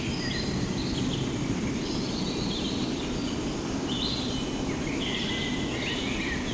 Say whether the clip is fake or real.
real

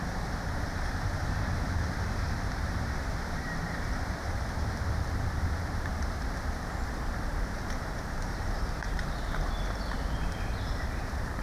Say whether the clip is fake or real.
fake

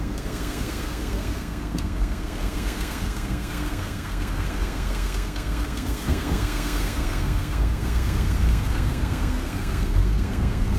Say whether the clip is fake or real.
fake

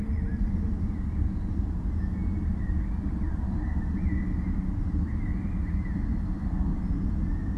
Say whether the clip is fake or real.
real